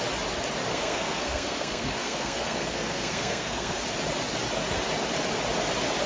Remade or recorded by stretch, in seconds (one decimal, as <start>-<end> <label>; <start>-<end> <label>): 0.0-0.7 recorded; 0.7-3.8 remade; 3.8-6.1 recorded